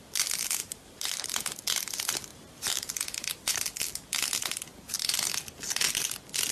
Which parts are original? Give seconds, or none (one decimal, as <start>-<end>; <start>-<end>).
0.0-0.6; 1.3-2.3; 2.9-6.5